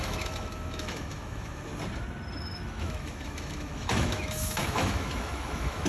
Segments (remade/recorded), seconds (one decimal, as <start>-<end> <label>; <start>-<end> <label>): 0.0-1.7 remade; 1.7-2.4 recorded; 2.4-5.9 remade